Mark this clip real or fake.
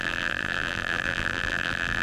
fake